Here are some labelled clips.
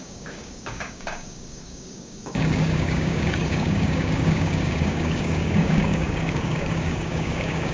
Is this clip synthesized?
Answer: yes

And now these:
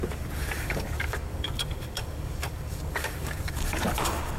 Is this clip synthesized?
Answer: yes